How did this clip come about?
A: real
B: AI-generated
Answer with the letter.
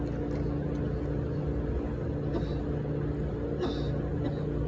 A